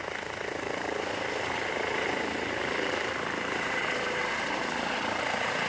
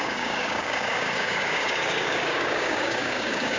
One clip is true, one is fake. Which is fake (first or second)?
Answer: second